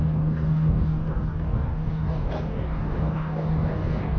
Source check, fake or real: fake